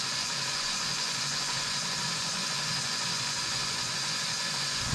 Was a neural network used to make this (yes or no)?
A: yes